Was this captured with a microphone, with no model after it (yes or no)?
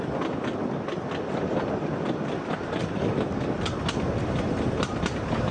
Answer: yes